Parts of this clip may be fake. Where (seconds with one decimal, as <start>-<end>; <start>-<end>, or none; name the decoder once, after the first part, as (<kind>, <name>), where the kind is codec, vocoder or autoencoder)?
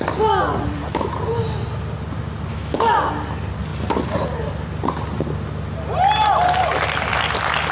2.5-3.1 (autoencoder, DAC-VAE)